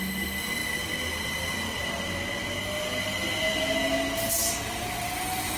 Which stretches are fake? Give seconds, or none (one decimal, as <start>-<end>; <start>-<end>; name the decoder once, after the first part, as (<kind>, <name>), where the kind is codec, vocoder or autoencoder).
none